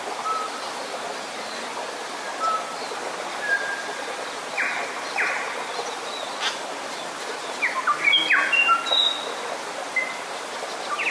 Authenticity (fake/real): real